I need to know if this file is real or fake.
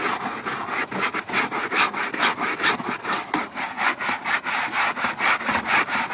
real